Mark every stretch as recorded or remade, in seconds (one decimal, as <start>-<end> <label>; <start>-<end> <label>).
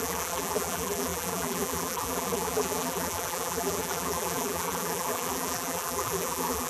0.0-6.7 remade